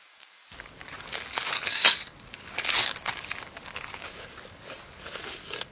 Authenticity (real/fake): fake